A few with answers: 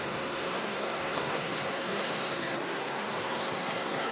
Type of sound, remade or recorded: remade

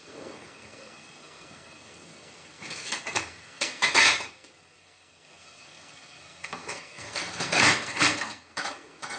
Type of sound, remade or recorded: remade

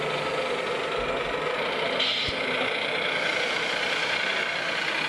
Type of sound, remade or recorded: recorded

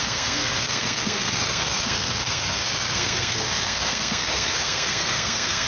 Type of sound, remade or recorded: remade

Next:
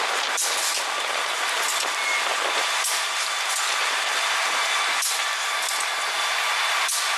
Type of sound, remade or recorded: recorded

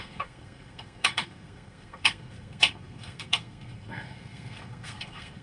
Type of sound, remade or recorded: remade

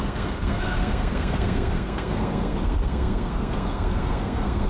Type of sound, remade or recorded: remade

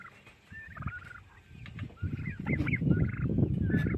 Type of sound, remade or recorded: recorded